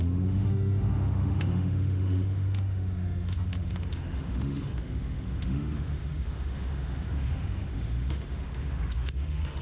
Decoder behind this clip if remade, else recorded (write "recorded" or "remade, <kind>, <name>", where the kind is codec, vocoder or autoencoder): remade, autoencoder, DAC-VAE